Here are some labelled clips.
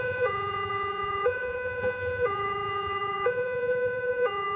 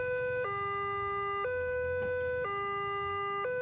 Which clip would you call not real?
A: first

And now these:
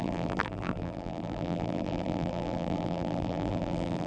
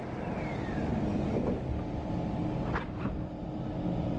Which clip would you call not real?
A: first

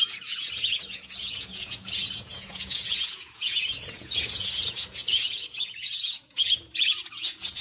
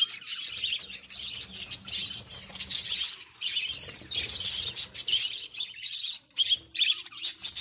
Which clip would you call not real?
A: first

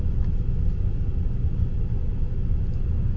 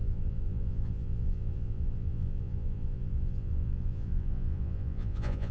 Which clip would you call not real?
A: second